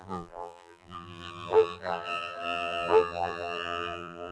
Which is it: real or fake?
fake